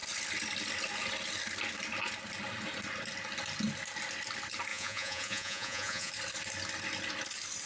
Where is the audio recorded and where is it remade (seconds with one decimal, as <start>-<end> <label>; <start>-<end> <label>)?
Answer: 0.0-4.7 recorded; 4.7-6.1 remade; 6.1-7.7 recorded